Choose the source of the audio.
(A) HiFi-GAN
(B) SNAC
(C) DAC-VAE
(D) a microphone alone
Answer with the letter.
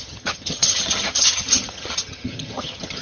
A